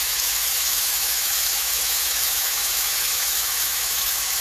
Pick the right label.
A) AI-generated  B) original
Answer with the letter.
A